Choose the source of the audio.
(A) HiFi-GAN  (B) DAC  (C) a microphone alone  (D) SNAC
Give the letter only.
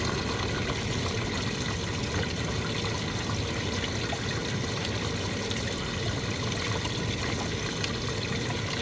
C